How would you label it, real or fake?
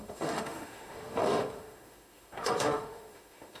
fake